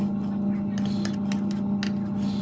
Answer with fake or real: real